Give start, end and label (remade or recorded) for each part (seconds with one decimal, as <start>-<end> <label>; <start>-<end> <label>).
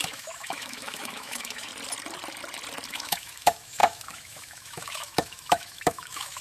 0.0-1.7 remade; 1.7-2.9 recorded; 2.9-6.4 remade